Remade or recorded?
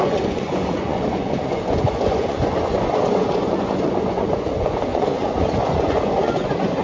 remade